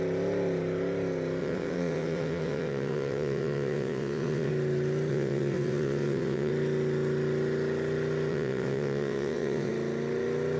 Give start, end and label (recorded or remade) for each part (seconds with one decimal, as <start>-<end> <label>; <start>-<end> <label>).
0.0-1.4 recorded; 1.4-4.5 remade; 4.5-5.1 recorded; 5.1-6.5 remade; 6.5-8.3 recorded; 8.3-9.7 remade; 9.7-10.6 recorded